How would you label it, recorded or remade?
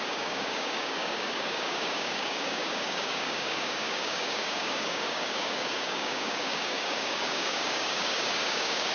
remade